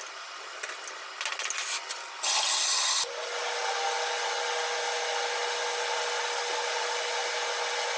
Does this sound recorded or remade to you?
recorded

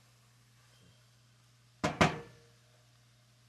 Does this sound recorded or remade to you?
recorded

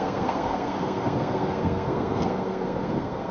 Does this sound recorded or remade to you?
remade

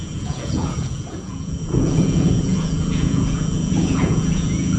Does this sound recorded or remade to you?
remade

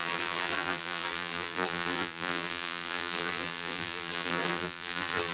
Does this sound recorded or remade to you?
remade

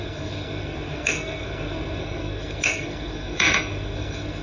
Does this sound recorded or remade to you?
remade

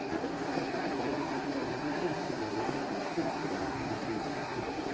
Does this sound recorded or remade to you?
remade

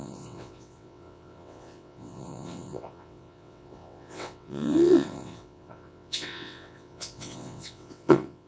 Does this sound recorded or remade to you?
remade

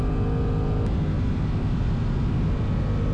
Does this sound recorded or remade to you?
recorded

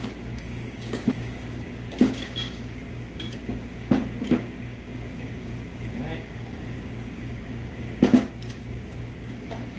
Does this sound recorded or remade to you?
remade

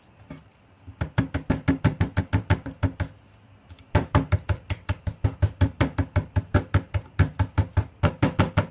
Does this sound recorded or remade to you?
recorded